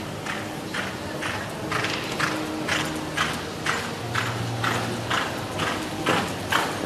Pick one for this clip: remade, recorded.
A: recorded